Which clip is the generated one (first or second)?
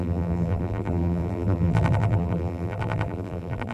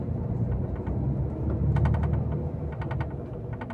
first